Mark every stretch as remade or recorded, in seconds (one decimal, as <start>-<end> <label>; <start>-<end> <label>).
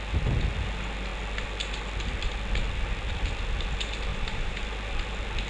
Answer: 0.0-4.1 recorded; 4.1-4.6 remade; 4.6-5.5 recorded